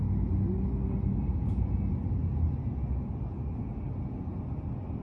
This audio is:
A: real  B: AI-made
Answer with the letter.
A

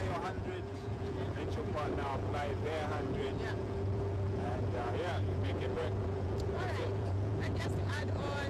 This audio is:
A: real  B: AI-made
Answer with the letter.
B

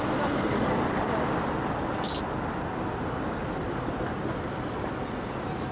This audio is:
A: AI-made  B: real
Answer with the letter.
B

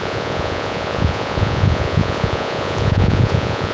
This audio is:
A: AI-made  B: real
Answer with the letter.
A